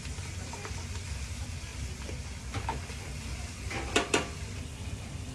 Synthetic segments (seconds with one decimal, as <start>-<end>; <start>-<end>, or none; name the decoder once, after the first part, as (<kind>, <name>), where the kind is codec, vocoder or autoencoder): 0.0-1.7 (vocoder, BigVGAN v2); 3.8-5.3